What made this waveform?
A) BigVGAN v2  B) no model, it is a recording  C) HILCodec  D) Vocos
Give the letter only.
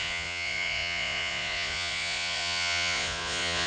D